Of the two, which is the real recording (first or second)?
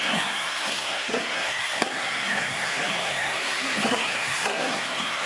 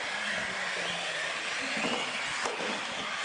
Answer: second